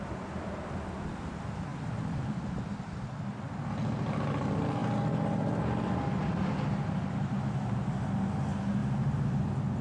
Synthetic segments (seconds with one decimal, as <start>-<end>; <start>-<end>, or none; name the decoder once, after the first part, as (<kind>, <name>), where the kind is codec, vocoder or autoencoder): none